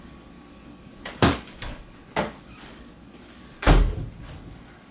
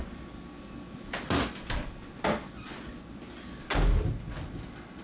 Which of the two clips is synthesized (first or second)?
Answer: first